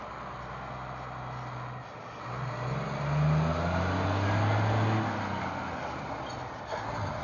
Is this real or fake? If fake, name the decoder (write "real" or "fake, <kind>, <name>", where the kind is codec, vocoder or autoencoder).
real